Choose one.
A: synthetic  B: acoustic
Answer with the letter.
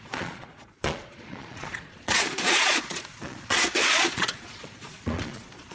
A